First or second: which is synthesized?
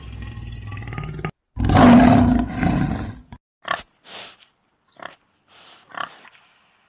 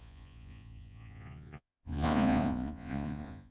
second